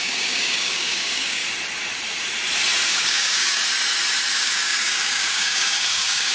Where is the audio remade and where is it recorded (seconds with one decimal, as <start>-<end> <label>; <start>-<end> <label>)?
0.0-1.4 remade; 1.4-2.9 recorded; 2.9-3.6 remade; 3.6-4.3 recorded; 4.3-6.3 remade